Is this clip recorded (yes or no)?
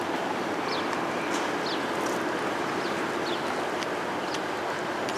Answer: yes